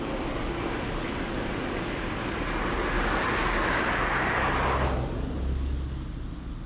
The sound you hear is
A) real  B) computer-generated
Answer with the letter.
A